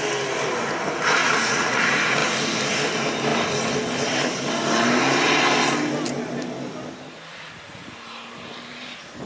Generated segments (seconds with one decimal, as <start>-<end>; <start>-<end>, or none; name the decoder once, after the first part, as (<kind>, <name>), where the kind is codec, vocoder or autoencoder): 1.2-1.8 (vocoder, Vocos); 7.3-8.0